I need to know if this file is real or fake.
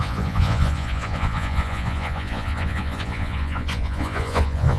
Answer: fake